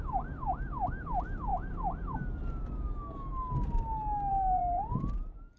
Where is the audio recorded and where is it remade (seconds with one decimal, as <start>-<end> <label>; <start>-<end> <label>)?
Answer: 0.0-1.5 recorded; 1.5-2.0 remade; 2.0-4.3 recorded; 4.3-5.6 remade